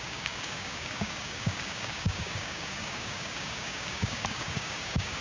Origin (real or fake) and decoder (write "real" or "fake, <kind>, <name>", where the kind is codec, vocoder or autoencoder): fake, codec, DAC